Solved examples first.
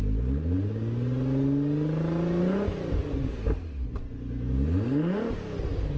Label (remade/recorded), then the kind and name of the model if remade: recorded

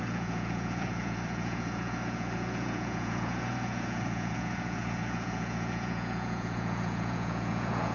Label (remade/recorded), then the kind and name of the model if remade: remade, vocoder, Vocos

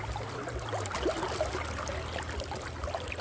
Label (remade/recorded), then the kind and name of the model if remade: recorded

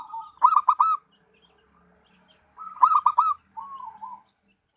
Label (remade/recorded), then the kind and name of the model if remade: recorded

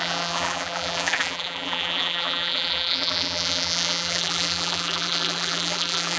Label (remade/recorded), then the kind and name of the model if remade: remade, vocoder, BigVGAN v2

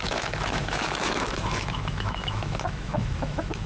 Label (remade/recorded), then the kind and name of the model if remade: remade, autoencoder, DAC-VAE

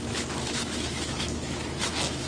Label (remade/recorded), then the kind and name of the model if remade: remade, autoencoder, DAC-VAE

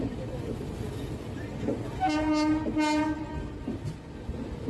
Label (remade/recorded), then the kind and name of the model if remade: recorded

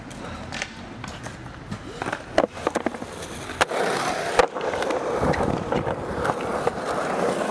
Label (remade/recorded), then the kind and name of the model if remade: recorded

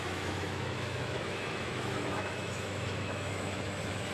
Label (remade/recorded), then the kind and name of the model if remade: remade, autoencoder, DAC-VAE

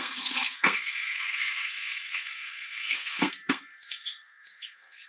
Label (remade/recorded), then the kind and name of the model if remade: remade, codec, SNAC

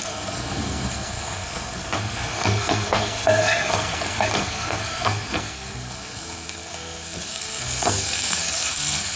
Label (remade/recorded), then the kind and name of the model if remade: remade, codec, SNAC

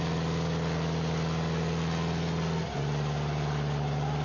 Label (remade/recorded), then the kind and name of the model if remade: recorded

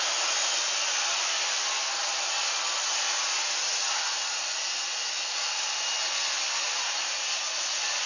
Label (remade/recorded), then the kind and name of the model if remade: recorded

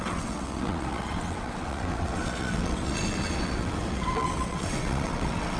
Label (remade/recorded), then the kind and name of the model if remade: remade, vocoder, WaveNeXt